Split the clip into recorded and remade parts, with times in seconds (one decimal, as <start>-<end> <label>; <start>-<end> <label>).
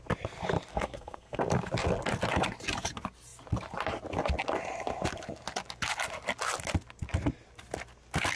0.0-0.7 recorded; 0.7-1.4 remade; 1.4-8.4 recorded